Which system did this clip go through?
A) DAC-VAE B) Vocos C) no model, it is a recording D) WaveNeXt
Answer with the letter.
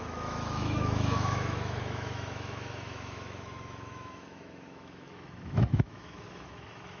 A